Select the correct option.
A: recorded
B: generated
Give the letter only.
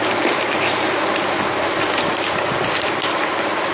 A